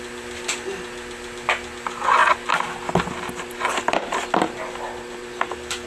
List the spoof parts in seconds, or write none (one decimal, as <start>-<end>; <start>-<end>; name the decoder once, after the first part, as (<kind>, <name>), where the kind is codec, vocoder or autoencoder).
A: none